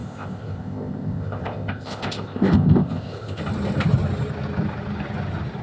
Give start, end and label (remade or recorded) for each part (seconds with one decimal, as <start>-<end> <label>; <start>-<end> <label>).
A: 0.0-3.4 remade; 3.4-5.6 recorded